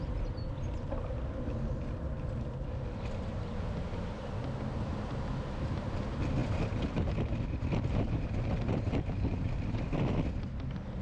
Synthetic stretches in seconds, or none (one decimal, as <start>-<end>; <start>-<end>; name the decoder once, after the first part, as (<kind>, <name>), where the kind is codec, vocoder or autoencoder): 6.4-10.1 (vocoder, BigVGAN v2)